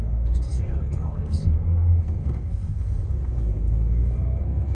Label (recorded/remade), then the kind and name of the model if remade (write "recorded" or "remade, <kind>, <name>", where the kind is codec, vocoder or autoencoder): remade, codec, SNAC